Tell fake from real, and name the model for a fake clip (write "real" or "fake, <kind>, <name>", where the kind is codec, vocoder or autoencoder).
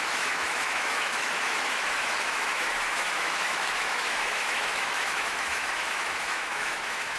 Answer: fake, autoencoder, DAC-VAE